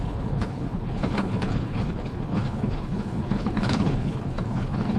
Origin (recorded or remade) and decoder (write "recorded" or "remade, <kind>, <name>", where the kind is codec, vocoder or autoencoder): remade, codec, HILCodec